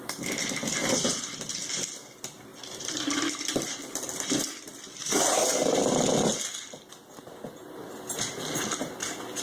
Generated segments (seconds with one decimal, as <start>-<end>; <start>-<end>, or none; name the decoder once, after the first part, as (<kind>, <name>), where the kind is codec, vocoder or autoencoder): 0.8-1.6 (vocoder, BigVGAN v2); 2.5-5.6